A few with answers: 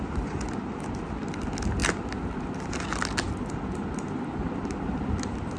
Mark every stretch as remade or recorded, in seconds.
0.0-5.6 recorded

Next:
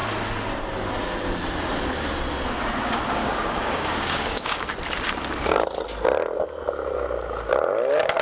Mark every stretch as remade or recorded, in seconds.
0.0-3.2 recorded; 3.2-4.7 remade; 4.7-8.2 recorded

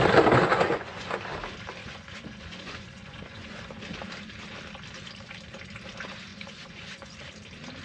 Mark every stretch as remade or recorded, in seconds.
0.0-0.5 recorded; 0.5-1.2 remade; 1.2-1.8 recorded; 1.8-3.7 remade; 3.7-6.3 recorded; 6.3-7.2 remade; 7.2-7.8 recorded

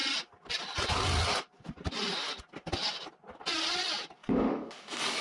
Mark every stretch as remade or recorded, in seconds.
0.0-4.2 recorded; 4.2-5.2 remade